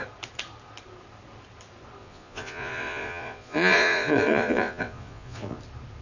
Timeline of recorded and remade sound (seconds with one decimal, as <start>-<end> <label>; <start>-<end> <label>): 0.0-2.0 recorded; 2.0-5.6 remade; 5.6-6.0 recorded